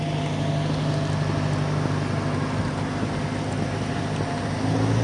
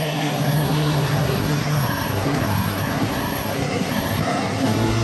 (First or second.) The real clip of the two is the first